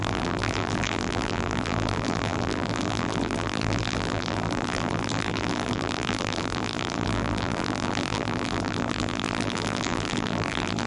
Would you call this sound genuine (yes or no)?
no